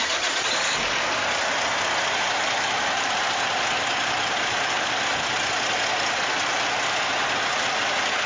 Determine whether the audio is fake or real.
real